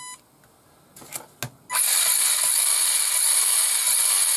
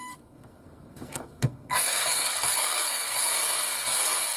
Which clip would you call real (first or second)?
first